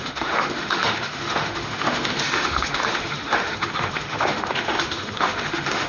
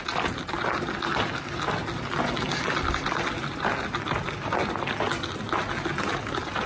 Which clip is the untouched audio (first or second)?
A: second